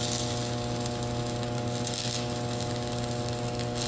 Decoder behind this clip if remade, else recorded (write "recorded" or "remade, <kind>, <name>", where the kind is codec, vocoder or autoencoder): recorded